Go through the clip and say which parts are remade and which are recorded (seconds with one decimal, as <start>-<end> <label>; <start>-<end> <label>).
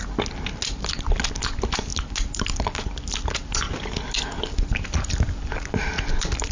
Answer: 0.0-6.5 recorded